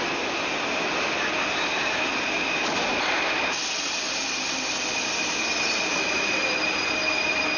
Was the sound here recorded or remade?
recorded